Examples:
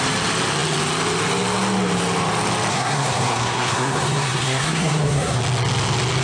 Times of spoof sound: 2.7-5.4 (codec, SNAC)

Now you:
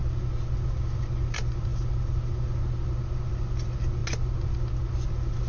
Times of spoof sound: none

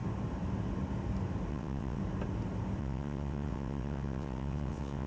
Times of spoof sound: 1.5-2.0 (vocoder, WaveNeXt); 2.8-5.1

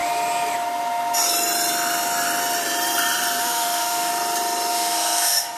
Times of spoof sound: 3.4-4.1 (autoencoder, DAC-VAE); 4.7-5.6

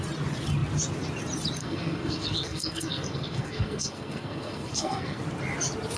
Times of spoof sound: 1.6-5.2 (codec, SNAC)

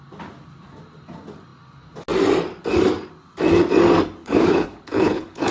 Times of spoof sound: 4.2-5.5 (codec, HILCodec)

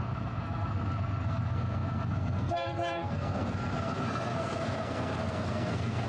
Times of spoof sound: 0.0-6.1 (codec, SNAC)